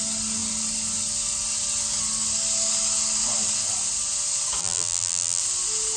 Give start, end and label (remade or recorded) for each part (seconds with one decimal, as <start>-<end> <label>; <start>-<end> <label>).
0.0-4.6 recorded; 4.6-5.4 remade; 5.4-6.0 recorded